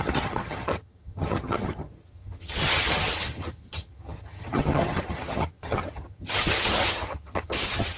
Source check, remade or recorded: remade